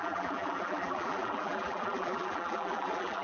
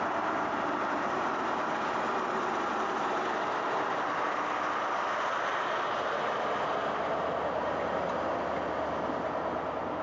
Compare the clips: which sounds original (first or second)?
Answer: second